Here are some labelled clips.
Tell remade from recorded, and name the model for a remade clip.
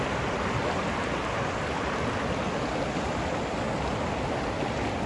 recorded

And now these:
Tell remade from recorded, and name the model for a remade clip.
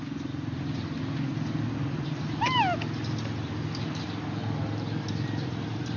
recorded